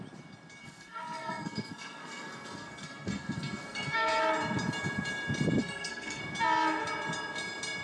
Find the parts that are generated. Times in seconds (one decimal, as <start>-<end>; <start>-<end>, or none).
0.6-4.2; 5.6-6.2